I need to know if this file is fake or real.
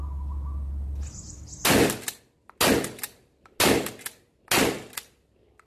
real